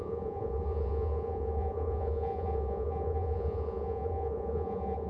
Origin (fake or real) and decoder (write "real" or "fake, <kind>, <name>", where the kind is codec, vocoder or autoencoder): fake, vocoder, Vocos